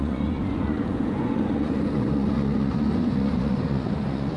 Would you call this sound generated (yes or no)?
yes